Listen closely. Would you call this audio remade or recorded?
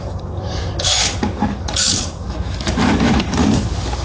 remade